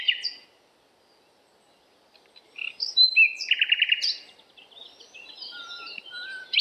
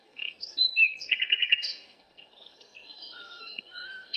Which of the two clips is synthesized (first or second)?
second